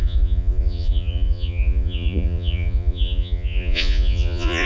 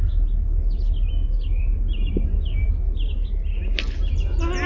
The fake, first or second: first